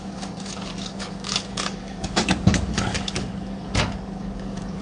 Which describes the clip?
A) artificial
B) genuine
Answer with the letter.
A